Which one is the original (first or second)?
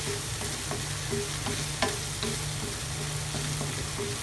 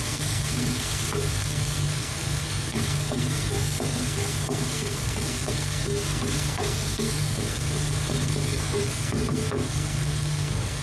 first